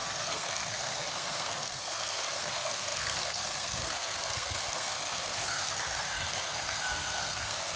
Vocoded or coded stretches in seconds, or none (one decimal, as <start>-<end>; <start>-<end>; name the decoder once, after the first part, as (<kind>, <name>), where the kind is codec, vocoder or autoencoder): 0.0-7.8 (codec, SNAC)